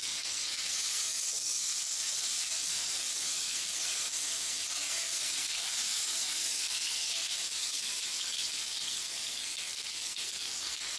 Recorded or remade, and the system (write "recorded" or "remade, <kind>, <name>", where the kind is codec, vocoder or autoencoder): remade, codec, SNAC